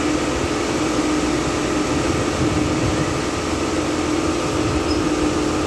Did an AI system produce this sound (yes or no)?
no